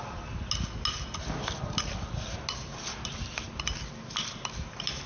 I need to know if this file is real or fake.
real